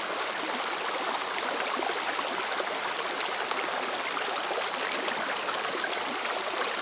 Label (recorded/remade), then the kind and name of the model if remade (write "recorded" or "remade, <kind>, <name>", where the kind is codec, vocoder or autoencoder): recorded